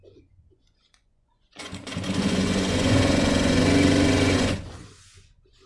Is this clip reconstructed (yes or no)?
yes